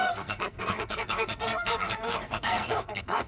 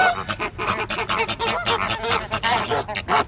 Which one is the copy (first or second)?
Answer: first